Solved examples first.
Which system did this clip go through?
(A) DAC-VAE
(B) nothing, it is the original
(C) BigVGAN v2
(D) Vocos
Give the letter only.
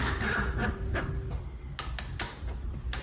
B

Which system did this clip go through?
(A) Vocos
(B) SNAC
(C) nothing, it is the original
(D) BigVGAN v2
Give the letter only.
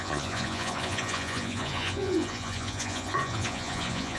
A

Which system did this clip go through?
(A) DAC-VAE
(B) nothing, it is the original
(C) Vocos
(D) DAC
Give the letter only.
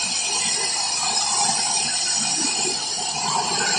B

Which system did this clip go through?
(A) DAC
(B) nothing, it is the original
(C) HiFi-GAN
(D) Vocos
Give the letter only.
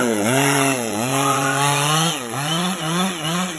D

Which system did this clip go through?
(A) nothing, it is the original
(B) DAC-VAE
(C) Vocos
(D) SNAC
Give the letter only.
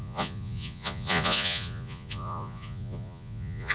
C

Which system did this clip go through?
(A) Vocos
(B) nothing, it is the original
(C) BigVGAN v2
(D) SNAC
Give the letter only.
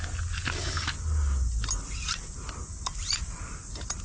B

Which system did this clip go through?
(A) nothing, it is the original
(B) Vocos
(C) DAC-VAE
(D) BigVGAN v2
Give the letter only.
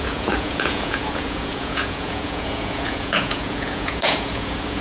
B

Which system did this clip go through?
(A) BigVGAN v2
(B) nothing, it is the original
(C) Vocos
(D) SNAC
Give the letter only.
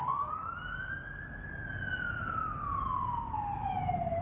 B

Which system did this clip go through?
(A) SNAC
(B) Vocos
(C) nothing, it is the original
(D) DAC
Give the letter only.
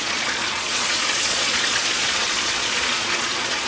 B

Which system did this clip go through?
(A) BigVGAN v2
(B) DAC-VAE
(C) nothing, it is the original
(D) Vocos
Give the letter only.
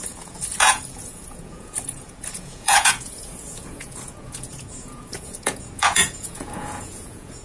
D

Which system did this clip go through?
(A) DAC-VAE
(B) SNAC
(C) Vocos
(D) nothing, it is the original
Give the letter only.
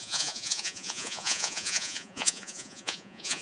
C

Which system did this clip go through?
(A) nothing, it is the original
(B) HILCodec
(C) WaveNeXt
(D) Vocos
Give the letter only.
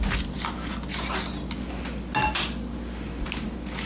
A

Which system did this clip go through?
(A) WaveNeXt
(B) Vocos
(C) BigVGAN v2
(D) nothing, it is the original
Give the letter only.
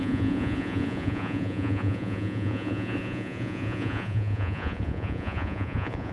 B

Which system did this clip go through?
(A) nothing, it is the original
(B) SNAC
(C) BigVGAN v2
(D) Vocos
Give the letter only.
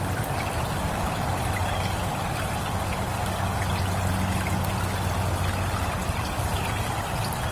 A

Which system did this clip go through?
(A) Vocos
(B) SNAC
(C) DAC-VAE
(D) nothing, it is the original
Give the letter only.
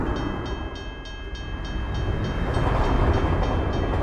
D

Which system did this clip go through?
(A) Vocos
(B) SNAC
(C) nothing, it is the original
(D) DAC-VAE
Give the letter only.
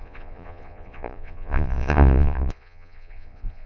A